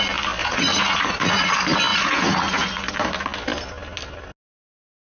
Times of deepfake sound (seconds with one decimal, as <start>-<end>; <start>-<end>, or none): 0.4-1.5; 1.9-2.8